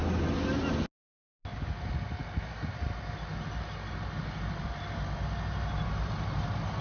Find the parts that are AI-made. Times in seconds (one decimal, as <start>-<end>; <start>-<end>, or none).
none